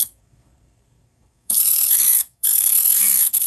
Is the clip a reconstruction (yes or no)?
yes